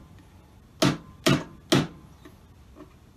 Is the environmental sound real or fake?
real